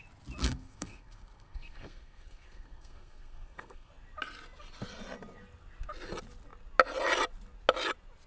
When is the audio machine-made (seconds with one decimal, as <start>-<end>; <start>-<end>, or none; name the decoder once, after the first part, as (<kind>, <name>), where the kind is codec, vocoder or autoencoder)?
0.4-3.9 (codec, SNAC)